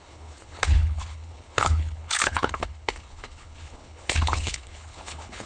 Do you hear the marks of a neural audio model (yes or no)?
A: yes